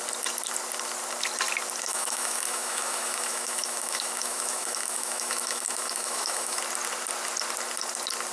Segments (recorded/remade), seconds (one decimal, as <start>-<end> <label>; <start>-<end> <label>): 0.0-1.9 recorded; 1.9-6.6 remade; 6.6-8.3 recorded